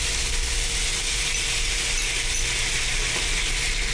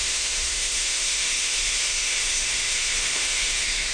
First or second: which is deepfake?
second